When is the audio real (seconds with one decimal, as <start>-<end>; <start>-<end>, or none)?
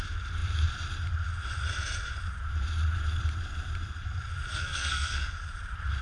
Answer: 0.0-4.5; 5.3-6.0